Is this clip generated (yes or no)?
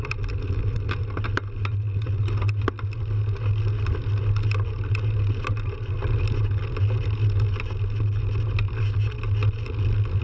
no